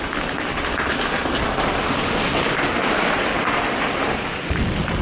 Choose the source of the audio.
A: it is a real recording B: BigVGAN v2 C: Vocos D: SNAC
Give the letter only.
A